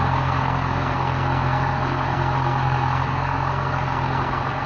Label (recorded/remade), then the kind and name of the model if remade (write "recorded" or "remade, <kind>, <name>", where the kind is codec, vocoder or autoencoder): remade, codec, SNAC